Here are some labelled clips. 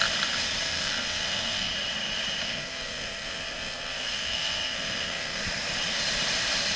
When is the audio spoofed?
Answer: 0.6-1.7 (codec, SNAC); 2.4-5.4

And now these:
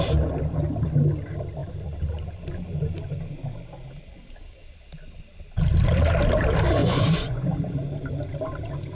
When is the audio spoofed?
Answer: 6.8-7.7 (vocoder, Vocos)

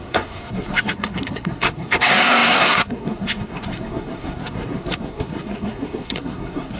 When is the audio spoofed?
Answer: 0.0-6.8 (codec, SNAC)